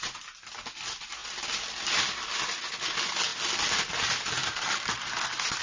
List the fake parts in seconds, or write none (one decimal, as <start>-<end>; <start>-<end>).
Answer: none